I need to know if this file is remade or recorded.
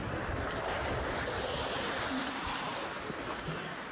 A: recorded